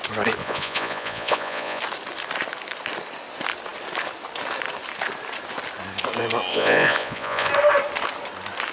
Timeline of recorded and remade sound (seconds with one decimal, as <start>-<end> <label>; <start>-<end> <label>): 0.0-0.4 recorded; 0.4-1.8 remade; 1.8-6.5 recorded; 6.5-7.5 remade; 7.5-8.7 recorded